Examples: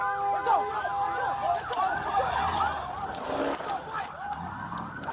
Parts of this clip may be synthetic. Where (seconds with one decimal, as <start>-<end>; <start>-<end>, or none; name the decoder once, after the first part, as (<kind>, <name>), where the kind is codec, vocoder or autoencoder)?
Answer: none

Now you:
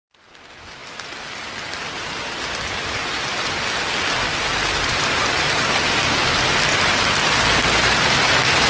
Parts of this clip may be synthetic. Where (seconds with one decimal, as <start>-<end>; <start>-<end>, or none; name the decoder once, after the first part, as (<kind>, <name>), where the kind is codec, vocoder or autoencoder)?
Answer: none

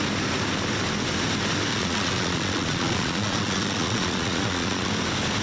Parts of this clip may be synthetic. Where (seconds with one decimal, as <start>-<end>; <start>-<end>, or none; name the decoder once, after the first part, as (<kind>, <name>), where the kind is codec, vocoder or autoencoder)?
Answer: 1.7-4.9 (vocoder, Vocos)